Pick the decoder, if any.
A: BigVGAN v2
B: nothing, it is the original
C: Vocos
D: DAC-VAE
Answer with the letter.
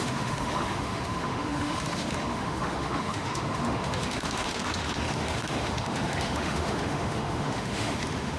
D